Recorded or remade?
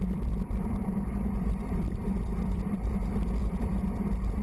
remade